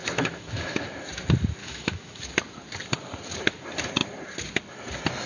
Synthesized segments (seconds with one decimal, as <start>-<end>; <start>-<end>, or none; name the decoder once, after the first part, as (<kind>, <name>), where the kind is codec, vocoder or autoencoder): 0.0-0.9 (autoencoder, DAC-VAE); 1.6-2.3